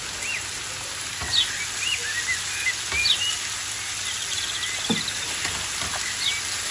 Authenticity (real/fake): real